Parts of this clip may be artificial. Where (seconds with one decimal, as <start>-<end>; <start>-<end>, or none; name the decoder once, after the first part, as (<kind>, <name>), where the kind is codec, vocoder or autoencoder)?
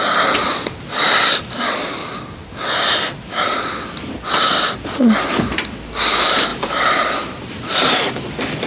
6.5-8.1 (vocoder, BigVGAN v2)